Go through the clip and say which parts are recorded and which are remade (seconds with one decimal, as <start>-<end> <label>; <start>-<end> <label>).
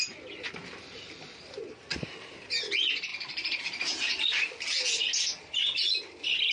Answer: 0.0-3.1 recorded; 3.1-4.7 remade; 4.7-6.5 recorded